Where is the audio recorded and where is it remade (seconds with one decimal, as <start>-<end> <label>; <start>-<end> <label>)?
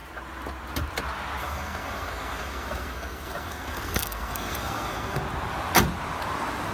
0.0-1.4 recorded; 1.4-5.2 remade; 5.2-6.7 recorded